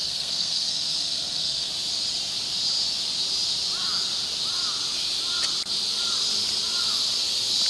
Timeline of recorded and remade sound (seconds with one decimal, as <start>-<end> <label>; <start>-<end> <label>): 0.0-1.7 remade; 1.7-7.7 recorded